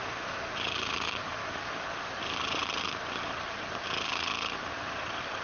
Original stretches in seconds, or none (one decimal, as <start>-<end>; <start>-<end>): none